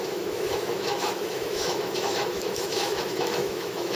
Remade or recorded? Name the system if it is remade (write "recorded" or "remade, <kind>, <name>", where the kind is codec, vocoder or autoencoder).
remade, autoencoder, DAC-VAE